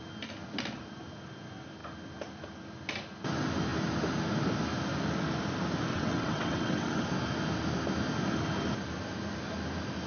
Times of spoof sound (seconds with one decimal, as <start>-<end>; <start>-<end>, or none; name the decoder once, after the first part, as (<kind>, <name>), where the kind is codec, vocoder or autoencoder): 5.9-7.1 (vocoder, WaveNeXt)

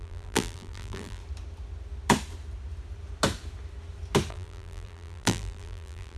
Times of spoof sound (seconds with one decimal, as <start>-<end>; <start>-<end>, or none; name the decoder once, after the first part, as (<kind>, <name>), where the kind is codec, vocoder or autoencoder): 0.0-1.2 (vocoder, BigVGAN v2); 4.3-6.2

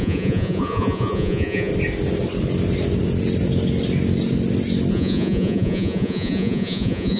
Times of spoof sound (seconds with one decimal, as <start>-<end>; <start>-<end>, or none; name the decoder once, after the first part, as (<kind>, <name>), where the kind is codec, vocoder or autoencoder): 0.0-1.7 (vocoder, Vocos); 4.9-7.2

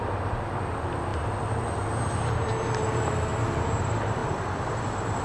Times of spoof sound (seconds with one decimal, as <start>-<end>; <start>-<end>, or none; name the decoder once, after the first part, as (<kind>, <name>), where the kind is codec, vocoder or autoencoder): 0.0-3.3 (vocoder, BigVGAN v2); 3.8-5.2

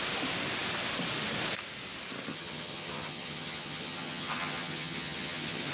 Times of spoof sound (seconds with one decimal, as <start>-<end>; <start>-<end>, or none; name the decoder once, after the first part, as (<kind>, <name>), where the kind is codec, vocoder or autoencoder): 2.3-5.7 (vocoder, HiFi-GAN)